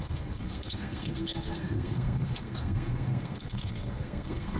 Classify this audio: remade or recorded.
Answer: remade